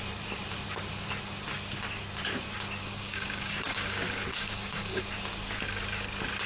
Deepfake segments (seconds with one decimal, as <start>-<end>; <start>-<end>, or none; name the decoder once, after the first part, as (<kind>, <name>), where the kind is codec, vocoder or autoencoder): 2.8-5.0 (codec, DAC)